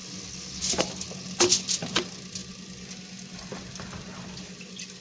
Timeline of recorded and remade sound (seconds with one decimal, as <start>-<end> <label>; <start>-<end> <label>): 0.0-5.0 recorded